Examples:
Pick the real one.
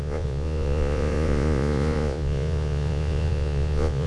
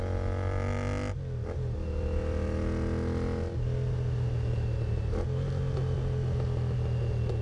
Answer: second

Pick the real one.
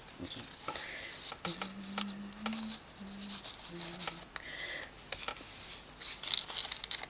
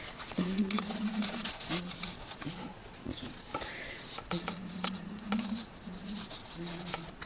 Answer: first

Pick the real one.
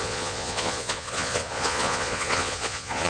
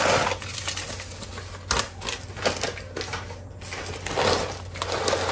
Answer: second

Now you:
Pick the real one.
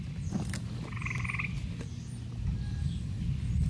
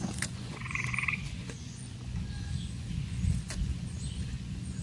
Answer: first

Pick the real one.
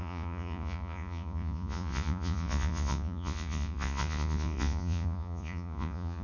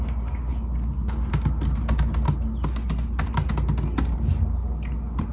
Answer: second